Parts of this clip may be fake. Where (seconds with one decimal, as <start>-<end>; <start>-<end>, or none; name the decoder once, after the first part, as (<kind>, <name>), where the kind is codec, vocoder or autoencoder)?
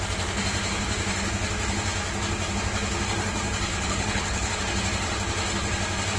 3.7-4.6 (codec, HILCodec)